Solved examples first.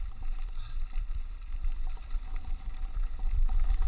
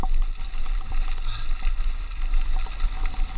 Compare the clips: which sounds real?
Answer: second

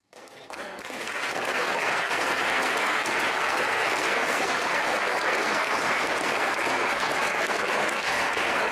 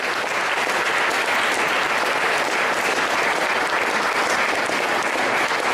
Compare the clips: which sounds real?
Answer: second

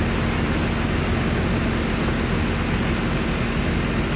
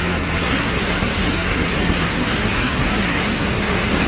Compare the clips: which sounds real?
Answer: first